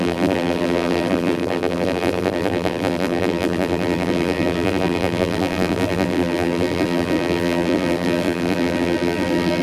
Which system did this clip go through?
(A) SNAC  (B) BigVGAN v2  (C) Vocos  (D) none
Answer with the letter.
B